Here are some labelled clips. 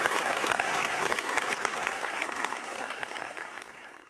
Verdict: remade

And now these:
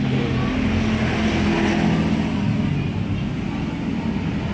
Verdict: recorded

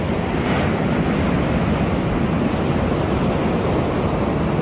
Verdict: recorded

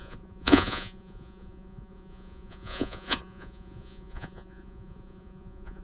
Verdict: remade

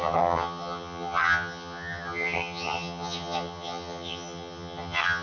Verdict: remade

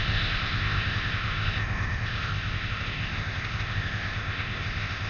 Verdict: remade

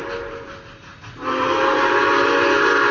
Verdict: recorded